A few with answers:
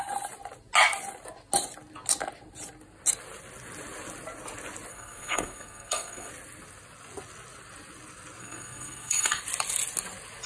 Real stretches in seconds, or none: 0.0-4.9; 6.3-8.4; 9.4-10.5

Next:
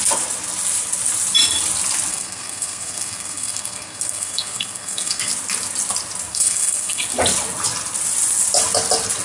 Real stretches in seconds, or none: 0.0-2.1; 5.3-6.3; 7.0-9.2

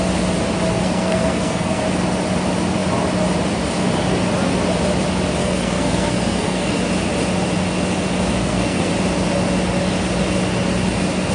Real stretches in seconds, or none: 0.0-0.7; 1.8-5.4; 6.8-8.4; 8.9-11.3

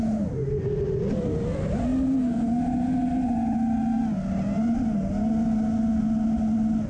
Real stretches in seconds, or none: 0.0-6.9

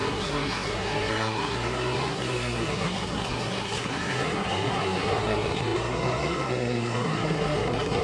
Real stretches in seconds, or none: none

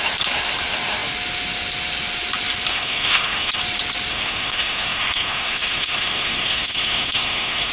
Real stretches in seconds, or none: 0.0-2.7; 3.6-4.1

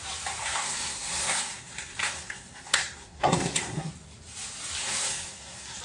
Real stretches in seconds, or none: 0.0-0.4; 3.9-4.8

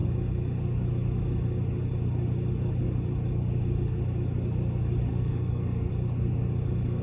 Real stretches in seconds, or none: 0.0-5.1; 5.9-7.0